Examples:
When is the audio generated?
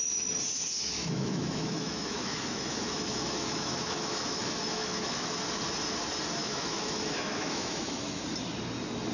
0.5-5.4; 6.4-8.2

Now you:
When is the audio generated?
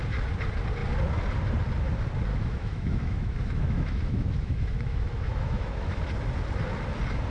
2.3-6.0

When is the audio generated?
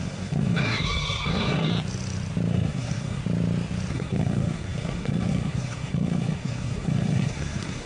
0.0-1.7; 2.5-3.2; 3.9-7.9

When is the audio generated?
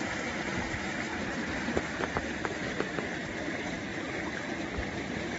0.0-3.9; 5.0-5.4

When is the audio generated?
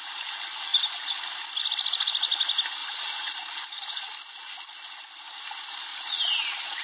2.8-4.9; 5.9-6.8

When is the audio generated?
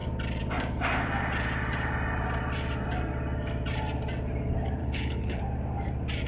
4.8-5.4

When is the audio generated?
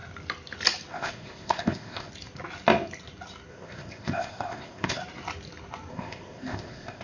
0.9-2.1; 3.5-5.0; 5.9-7.0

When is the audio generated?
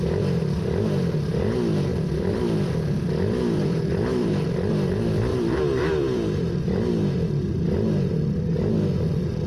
1.9-4.7; 5.3-6.6